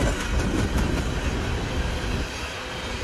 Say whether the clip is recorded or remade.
recorded